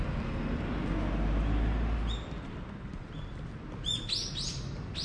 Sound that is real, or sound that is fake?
real